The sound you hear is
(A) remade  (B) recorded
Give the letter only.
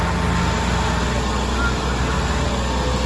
B